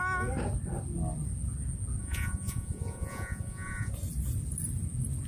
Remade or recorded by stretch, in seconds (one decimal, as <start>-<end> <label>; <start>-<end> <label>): 0.0-2.0 recorded; 2.0-3.9 remade; 3.9-5.3 recorded